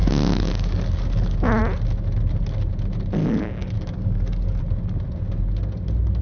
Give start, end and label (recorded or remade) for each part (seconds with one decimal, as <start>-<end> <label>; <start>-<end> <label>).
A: 0.0-1.6 remade; 1.6-3.2 recorded; 3.2-4.6 remade; 4.6-6.2 recorded